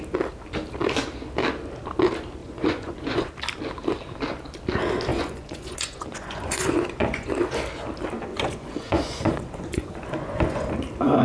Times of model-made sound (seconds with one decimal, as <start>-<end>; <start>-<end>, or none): 2.4-3.3; 5.1-7.3; 8.3-10.7